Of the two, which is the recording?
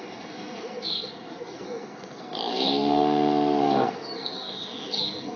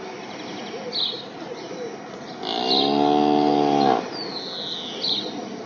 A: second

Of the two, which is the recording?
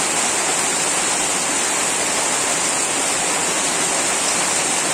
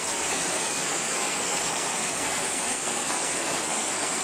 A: first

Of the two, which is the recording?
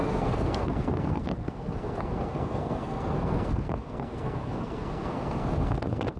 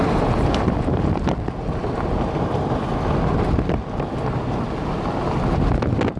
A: second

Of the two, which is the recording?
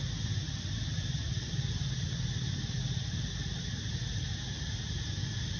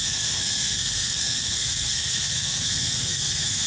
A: first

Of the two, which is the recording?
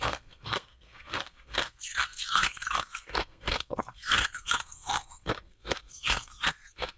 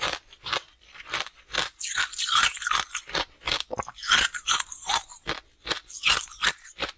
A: second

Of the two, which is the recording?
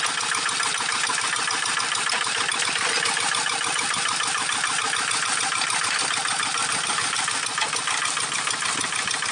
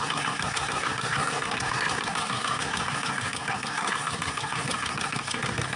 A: first